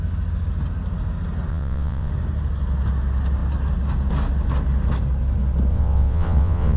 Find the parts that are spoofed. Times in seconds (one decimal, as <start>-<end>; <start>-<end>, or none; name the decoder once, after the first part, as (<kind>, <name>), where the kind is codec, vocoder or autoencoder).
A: 1.5-2.1 (vocoder, WaveNeXt); 5.7-6.8